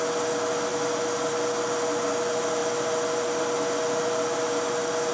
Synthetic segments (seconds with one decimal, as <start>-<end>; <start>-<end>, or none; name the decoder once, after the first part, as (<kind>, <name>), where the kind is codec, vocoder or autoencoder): none